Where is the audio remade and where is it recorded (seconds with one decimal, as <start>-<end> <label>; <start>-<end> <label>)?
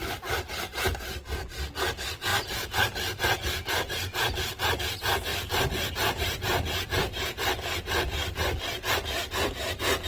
0.0-2.3 recorded; 2.3-4.8 remade; 4.8-5.3 recorded; 5.3-9.5 remade; 9.5-10.1 recorded